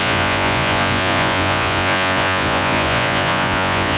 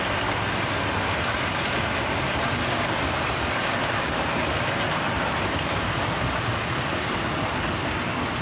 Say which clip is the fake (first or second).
first